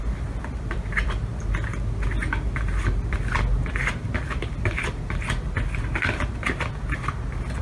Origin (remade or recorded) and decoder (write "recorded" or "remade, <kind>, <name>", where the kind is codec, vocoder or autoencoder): recorded